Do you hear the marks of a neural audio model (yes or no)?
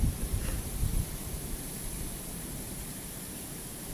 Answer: yes